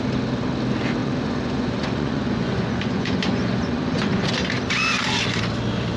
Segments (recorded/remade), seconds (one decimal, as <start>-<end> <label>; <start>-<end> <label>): 0.0-1.0 recorded; 1.0-4.3 remade; 4.3-6.0 recorded